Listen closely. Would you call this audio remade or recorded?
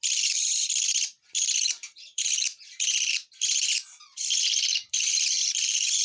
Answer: remade